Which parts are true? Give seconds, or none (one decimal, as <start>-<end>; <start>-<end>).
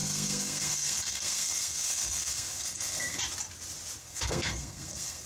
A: 3.2-4.0